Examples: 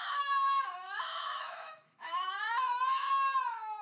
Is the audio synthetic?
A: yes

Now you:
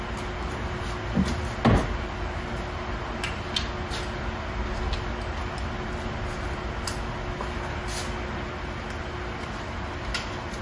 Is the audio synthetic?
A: no